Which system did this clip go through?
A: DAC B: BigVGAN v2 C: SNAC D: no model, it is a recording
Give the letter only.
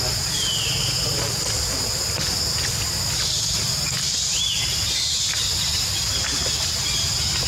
D